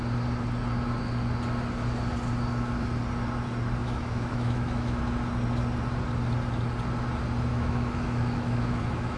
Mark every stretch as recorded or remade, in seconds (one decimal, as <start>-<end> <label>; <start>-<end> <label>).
0.0-3.8 recorded; 3.8-5.0 remade; 5.0-7.5 recorded; 7.5-9.2 remade